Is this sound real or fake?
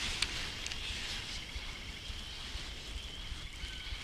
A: real